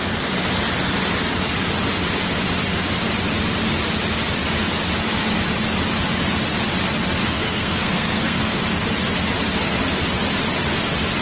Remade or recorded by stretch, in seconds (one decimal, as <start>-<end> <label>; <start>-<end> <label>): 0.0-7.2 recorded; 7.2-8.6 remade; 8.6-11.2 recorded